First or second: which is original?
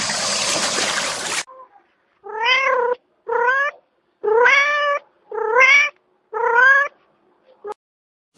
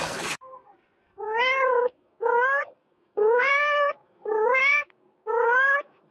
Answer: first